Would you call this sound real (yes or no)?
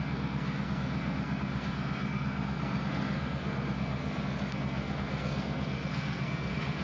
no